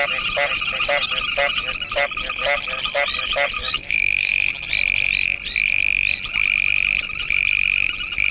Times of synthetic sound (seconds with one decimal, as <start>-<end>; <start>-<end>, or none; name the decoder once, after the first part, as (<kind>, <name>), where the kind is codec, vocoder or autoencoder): 3.6-4.3 (codec, DAC)